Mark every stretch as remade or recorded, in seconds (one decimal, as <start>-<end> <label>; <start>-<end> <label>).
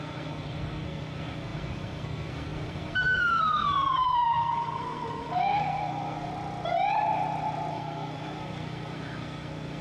0.0-6.3 remade; 6.3-7.7 recorded; 7.7-9.8 remade